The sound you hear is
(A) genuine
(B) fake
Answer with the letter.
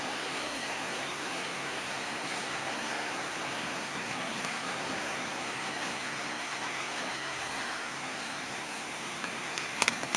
B